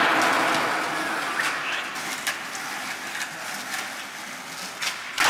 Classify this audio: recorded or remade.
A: recorded